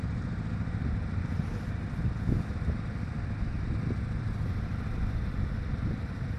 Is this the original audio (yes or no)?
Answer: no